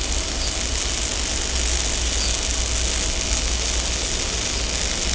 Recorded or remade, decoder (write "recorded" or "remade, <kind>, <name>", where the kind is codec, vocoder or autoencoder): recorded